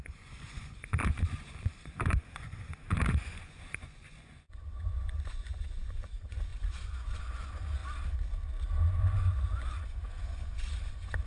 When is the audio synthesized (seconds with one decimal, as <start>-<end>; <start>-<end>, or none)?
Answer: 0.0-7.8; 9.0-11.3